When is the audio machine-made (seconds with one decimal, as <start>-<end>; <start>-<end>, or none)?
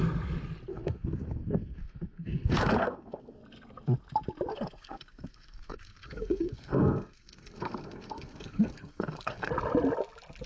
0.7-3.4; 4.5-9.5